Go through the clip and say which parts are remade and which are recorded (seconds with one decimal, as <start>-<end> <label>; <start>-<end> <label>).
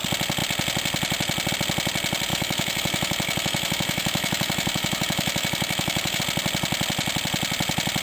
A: 0.0-2.3 recorded; 2.3-6.2 remade; 6.2-8.0 recorded